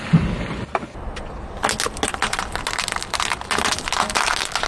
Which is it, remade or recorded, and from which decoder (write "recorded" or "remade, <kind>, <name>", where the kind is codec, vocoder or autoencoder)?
recorded